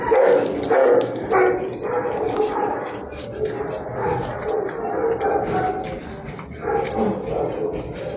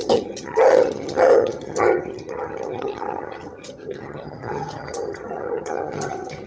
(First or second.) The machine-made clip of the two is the second